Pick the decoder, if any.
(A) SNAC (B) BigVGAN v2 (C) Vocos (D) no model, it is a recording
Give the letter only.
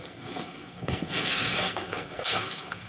A